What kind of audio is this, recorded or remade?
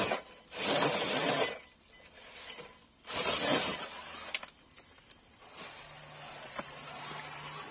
recorded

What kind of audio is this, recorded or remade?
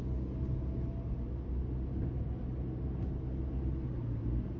recorded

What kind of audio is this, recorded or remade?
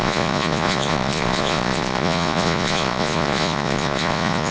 remade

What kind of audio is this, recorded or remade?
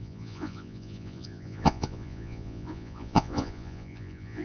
remade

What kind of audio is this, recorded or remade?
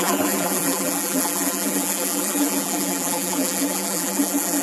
remade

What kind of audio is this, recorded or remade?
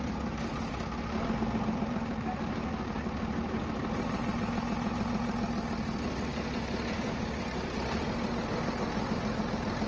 recorded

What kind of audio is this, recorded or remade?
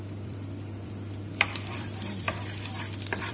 remade